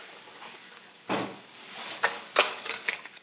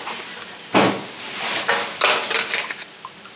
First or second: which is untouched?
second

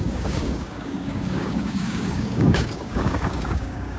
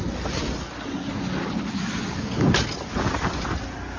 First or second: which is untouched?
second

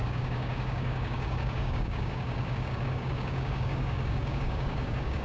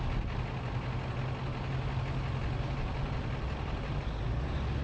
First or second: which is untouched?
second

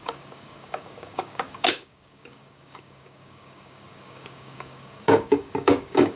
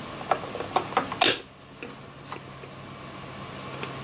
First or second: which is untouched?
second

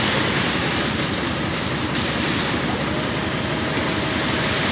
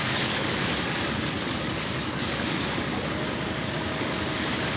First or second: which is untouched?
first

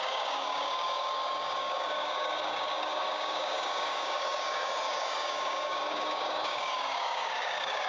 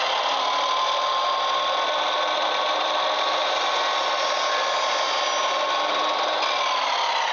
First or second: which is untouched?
second